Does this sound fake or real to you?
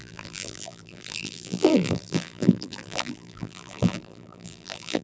fake